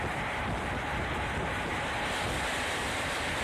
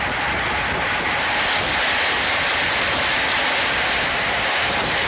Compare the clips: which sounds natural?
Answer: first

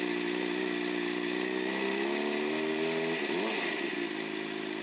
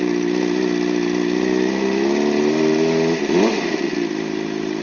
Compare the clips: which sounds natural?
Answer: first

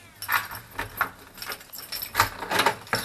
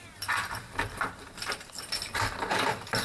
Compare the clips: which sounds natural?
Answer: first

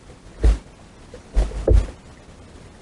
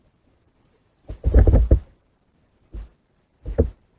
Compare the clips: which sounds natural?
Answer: first